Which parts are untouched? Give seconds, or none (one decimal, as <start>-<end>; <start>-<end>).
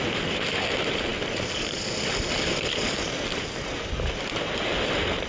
0.0-5.3